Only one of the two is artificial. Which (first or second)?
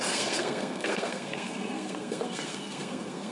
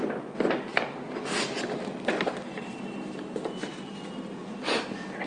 first